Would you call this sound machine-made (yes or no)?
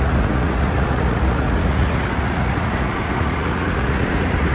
yes